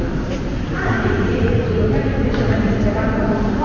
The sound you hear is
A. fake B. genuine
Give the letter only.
B